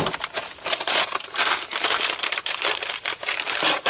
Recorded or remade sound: remade